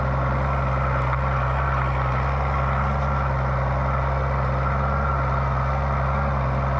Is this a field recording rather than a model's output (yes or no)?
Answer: yes